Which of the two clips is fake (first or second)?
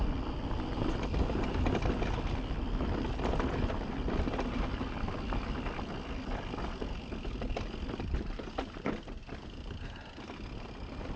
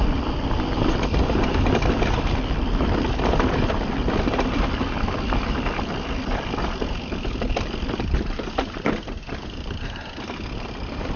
second